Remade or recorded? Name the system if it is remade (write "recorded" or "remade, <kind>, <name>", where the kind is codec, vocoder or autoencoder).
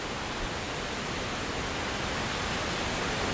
recorded